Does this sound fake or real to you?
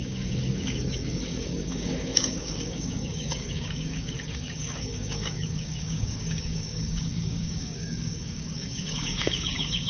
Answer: fake